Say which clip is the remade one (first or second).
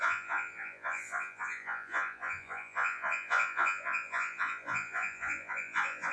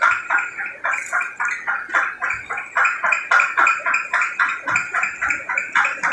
first